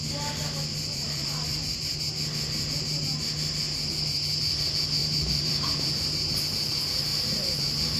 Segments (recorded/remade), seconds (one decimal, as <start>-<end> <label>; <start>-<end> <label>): 0.0-0.7 recorded; 0.7-2.0 remade; 2.0-5.0 recorded; 5.0-6.3 remade; 6.3-7.1 recorded; 7.1-8.0 remade